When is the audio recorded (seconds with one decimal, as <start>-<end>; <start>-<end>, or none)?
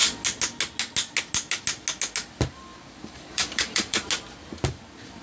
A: 0.0-2.7; 4.1-5.2